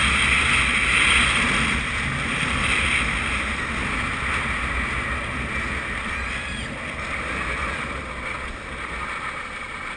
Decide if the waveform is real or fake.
real